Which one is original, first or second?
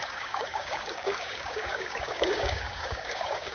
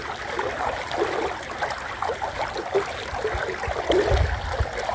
second